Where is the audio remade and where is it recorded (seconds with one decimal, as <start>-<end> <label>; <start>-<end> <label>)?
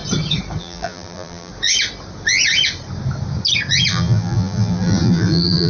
0.0-0.6 recorded; 0.6-1.5 remade; 1.5-3.9 recorded; 3.9-5.7 remade